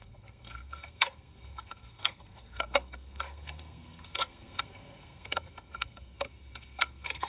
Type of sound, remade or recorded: remade